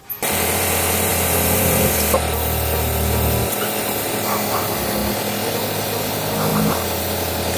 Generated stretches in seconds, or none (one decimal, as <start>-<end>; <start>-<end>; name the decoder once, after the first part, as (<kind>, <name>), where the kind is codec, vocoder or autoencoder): 0.0-5.0 (vocoder, BigVGAN v2); 5.6-7.6